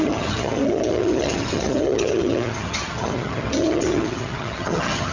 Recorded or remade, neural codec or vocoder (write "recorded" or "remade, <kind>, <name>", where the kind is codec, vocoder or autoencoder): remade, vocoder, HiFi-GAN